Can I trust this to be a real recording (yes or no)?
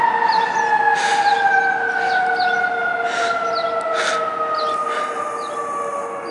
yes